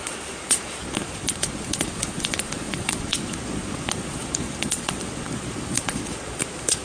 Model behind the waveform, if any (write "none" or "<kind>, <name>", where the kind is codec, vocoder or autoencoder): vocoder, Vocos